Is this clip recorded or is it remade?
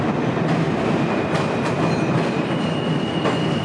recorded